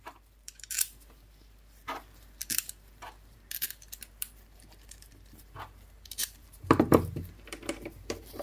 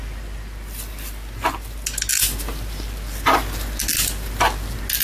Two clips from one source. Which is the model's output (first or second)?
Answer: first